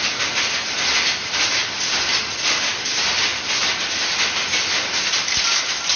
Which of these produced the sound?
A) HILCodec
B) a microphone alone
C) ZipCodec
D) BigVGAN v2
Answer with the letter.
B